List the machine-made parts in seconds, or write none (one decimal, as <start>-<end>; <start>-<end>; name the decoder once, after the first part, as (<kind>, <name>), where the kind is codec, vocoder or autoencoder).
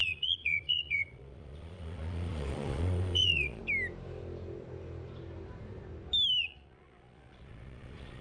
0.0-3.6 (vocoder, Vocos); 6.4-8.2